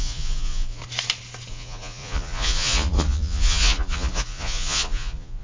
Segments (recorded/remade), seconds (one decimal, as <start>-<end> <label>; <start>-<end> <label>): 0.0-0.8 remade; 0.8-1.5 recorded; 1.5-5.4 remade